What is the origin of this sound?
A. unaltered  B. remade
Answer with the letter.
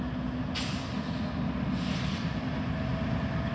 A